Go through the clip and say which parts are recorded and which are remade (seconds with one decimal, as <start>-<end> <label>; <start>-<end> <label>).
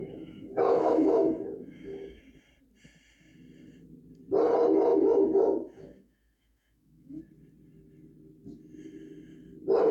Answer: 0.0-2.2 remade; 2.2-4.9 recorded; 4.9-7.2 remade; 7.2-9.9 recorded